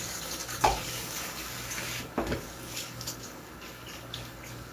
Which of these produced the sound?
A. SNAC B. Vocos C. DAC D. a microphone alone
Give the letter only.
C